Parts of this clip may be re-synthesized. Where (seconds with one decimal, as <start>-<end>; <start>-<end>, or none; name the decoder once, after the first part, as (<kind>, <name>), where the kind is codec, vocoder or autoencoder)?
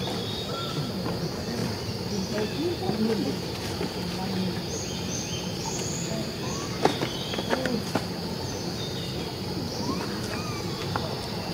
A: 10.8-11.5 (vocoder, BigVGAN v2)